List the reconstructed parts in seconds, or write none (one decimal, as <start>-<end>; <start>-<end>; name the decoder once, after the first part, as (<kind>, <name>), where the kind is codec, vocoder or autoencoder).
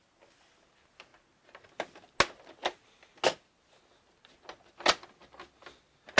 none